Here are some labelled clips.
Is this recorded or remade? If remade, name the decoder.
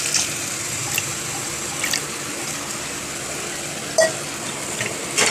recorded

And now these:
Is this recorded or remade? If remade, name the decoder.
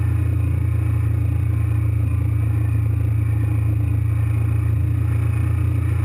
recorded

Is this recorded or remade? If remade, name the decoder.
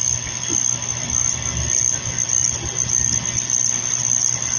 recorded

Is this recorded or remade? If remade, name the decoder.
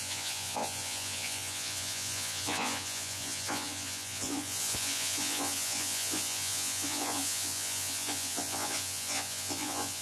remade, vocoder, Vocos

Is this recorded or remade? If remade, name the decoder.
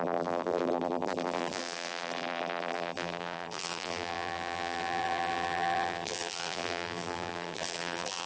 remade, vocoder, BigVGAN v2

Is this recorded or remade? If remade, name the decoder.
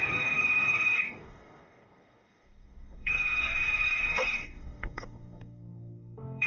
remade, codec, DAC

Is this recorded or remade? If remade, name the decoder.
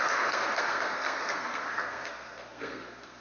remade, codec, SNAC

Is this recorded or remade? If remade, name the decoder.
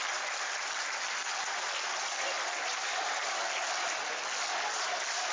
recorded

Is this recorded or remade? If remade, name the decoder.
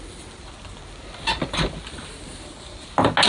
recorded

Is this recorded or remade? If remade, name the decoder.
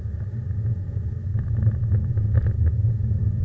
recorded